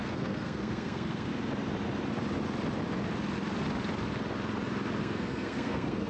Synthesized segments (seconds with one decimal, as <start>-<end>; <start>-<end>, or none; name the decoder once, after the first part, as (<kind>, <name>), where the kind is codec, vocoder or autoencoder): 0.0-1.3 (codec, SNAC); 5.0-6.1